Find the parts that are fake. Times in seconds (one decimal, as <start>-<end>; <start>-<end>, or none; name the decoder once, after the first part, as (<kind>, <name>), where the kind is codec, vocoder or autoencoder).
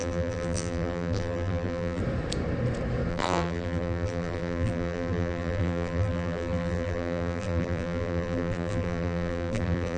0.0-2.0 (vocoder, BigVGAN v2); 3.1-10.0